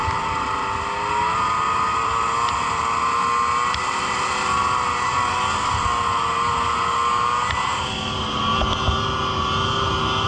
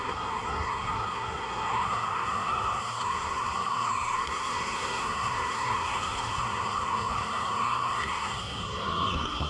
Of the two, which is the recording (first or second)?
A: first